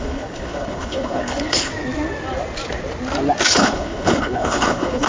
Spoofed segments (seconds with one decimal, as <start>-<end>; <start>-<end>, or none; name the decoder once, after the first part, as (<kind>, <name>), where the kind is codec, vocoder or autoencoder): 0.0-1.7 (codec, HILCodec); 3.5-5.1